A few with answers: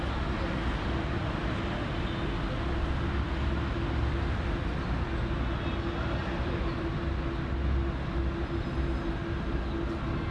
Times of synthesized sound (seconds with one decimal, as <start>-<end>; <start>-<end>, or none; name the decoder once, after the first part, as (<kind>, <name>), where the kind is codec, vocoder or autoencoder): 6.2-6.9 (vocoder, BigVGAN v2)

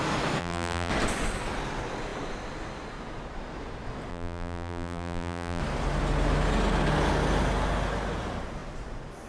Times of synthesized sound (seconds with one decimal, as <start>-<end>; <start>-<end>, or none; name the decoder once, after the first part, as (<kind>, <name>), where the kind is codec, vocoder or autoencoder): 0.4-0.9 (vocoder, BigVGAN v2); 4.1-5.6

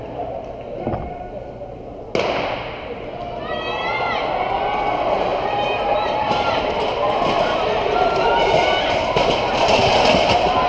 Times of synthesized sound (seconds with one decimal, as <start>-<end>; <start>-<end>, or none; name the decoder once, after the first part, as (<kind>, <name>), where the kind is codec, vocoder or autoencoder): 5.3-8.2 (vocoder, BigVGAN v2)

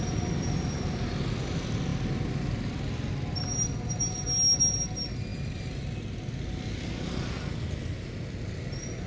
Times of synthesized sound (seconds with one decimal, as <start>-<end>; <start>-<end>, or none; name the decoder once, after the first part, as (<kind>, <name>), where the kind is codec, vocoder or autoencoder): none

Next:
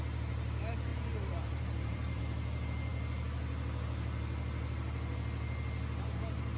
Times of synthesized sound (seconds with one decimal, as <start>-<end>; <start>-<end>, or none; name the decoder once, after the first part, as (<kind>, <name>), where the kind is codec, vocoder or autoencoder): 0.9-2.2 (vocoder, BigVGAN v2)

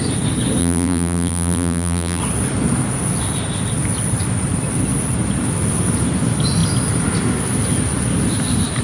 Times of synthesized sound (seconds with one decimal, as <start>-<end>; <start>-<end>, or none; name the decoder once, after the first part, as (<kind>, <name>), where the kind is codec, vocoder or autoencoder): 0.6-2.2 (vocoder, BigVGAN v2)

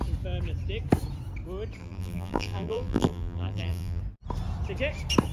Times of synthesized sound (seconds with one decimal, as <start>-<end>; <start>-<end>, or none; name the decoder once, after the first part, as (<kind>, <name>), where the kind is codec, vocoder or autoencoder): 1.8-4.0 (vocoder, BigVGAN v2)

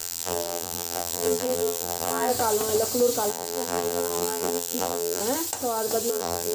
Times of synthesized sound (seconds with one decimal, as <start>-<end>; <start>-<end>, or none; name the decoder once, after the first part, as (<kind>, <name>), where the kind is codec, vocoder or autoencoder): 0.0-2.3 (vocoder, BigVGAN v2); 3.3-5.2; 6.1-6.5